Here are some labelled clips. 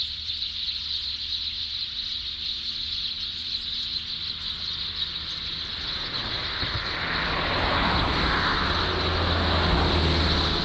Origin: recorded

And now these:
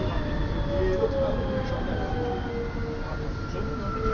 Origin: recorded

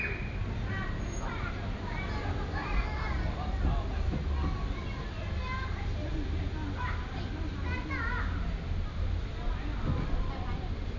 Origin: recorded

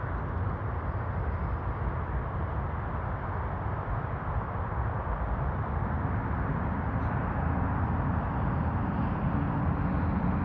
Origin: recorded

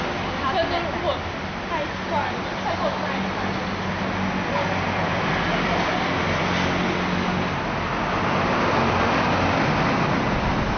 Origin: recorded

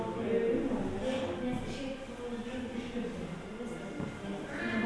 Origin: recorded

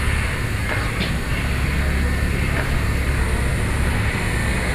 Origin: recorded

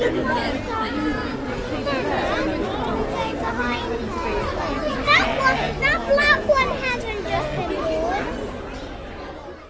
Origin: recorded